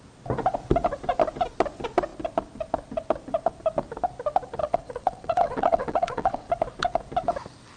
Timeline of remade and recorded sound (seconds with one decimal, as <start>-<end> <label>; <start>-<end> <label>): 0.0-4.6 recorded; 4.6-6.5 remade; 6.5-7.8 recorded